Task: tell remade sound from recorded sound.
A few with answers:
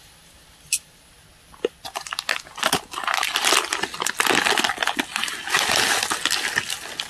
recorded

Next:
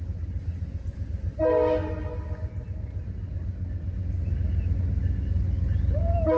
recorded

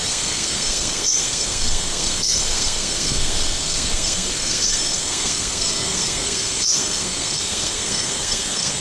remade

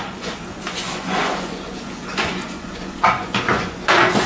remade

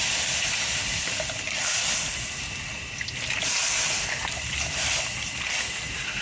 recorded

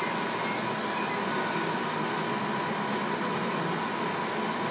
recorded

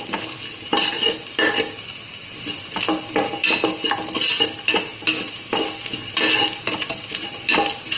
recorded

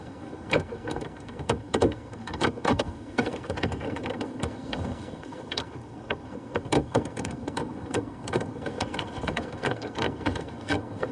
remade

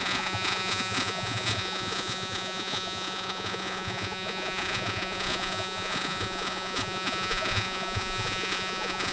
remade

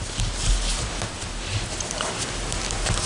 recorded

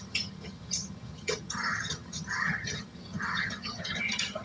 remade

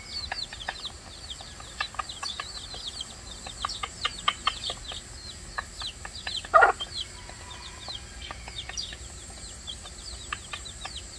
recorded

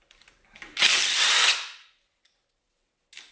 recorded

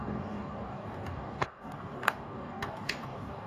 remade